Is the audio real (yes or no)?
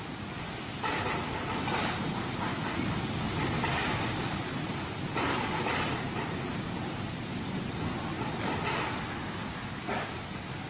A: yes